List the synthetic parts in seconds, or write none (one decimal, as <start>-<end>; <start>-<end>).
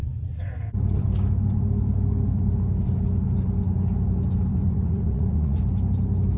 0.0-0.6; 4.5-5.6